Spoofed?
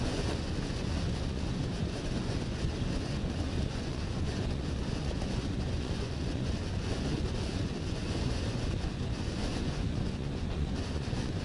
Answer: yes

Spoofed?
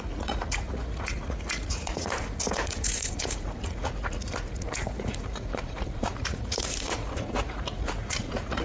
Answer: yes